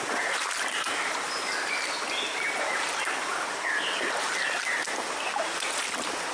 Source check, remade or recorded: recorded